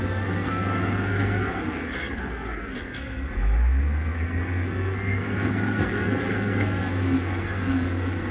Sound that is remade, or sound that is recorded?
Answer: remade